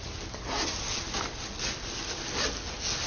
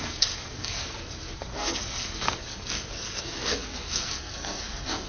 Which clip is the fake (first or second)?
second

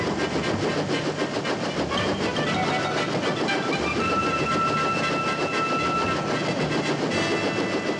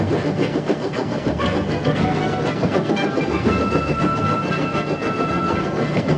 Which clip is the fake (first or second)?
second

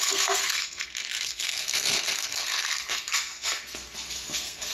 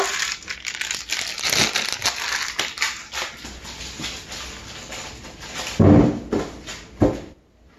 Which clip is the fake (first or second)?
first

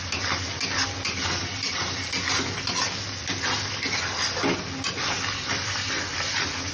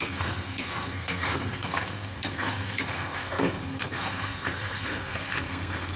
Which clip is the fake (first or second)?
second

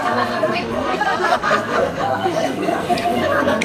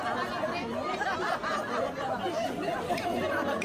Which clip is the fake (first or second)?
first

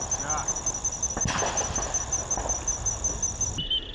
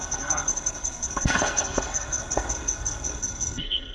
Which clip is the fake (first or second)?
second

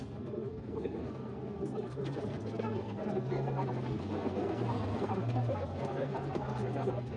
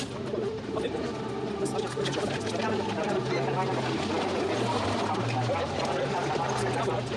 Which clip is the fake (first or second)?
first